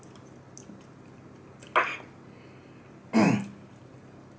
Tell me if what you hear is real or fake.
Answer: real